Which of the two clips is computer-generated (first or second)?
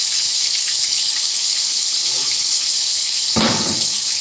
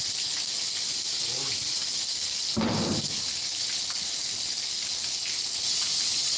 first